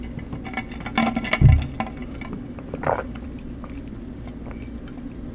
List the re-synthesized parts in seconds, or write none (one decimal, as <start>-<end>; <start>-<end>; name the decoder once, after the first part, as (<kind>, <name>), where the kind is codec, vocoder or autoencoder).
2.0-4.2 (vocoder, BigVGAN v2)